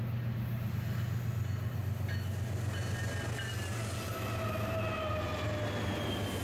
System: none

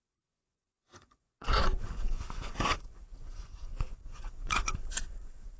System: vocoder, Vocos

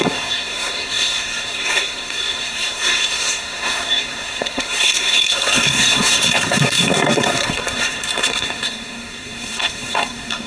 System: codec, SNAC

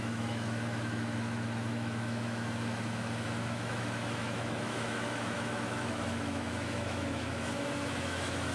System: autoencoder, DAC-VAE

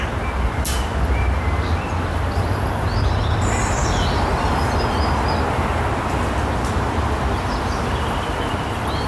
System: none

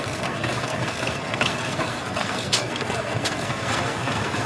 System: codec, SNAC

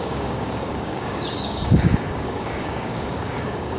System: codec, DAC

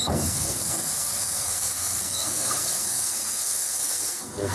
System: codec, SNAC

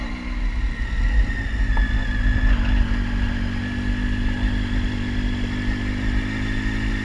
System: none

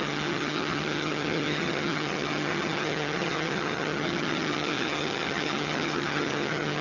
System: vocoder, HiFi-GAN